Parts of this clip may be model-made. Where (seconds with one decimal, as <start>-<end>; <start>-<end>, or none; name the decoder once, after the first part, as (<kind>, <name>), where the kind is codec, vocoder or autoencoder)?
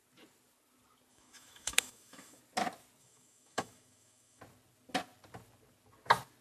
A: 1.1-2.4 (autoencoder, DAC-VAE); 3.0-4.4